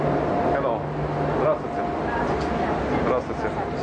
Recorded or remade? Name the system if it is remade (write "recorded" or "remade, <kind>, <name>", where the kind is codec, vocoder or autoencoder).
recorded